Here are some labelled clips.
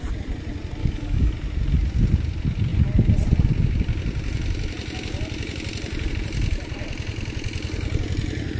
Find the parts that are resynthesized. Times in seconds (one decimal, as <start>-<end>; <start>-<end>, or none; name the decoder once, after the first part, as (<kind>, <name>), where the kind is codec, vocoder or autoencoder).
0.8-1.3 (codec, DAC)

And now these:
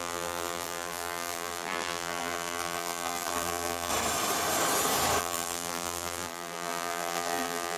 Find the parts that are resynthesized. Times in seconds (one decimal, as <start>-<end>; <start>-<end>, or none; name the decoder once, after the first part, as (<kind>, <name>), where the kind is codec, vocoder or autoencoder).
0.0-3.9 (vocoder, BigVGAN v2); 5.2-7.8

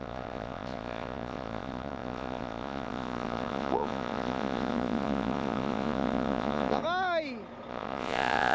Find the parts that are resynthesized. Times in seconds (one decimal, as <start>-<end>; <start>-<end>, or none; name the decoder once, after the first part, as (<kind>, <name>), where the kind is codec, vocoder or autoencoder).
0.0-6.8 (vocoder, Vocos); 7.7-8.5

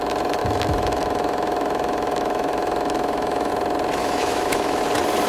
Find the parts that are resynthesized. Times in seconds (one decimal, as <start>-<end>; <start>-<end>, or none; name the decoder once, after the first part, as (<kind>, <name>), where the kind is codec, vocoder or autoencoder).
0.4-3.5 (autoencoder, DAC-VAE); 4.0-4.8

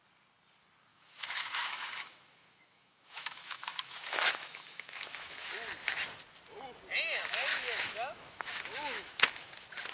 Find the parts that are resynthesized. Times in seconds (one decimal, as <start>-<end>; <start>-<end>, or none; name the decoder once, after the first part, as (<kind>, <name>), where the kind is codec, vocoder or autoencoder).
0.9-5.5 (autoencoder, DAC-VAE); 7.5-9.5

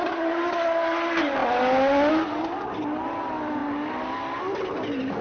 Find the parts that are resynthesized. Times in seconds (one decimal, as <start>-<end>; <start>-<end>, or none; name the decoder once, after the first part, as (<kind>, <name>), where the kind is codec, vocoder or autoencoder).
none

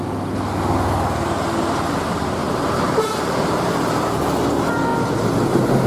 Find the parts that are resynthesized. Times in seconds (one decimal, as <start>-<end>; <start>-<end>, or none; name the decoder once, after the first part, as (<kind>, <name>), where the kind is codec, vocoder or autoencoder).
2.4-3.7 (vocoder, BigVGAN v2)

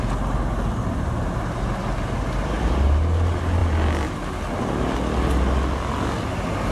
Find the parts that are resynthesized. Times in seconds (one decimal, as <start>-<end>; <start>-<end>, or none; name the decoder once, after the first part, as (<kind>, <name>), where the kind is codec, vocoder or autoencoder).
none